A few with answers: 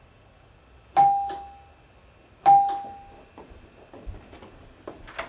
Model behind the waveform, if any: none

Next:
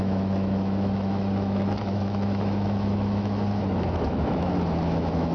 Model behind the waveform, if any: autoencoder, DAC-VAE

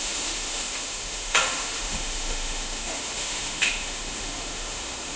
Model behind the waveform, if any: autoencoder, DAC-VAE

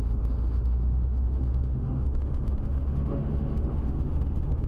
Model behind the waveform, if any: autoencoder, DAC-VAE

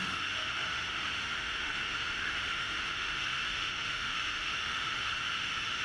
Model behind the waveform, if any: autoencoder, DAC-VAE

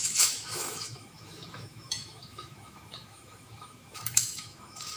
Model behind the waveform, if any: autoencoder, DAC-VAE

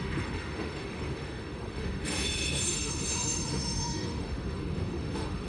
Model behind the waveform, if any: autoencoder, DAC-VAE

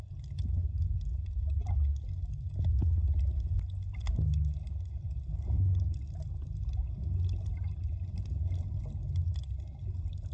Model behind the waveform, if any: none